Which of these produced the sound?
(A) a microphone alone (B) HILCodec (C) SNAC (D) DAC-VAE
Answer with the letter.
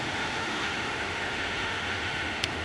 D